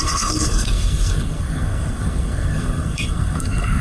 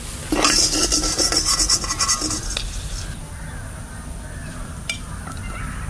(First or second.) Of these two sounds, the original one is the second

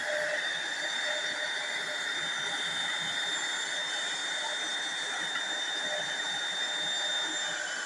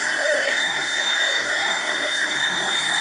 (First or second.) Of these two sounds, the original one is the first